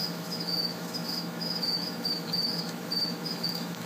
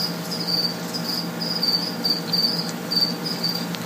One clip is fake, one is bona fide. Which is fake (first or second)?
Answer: first